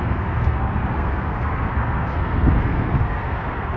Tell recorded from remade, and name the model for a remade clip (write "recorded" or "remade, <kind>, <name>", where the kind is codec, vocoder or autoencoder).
remade, codec, SNAC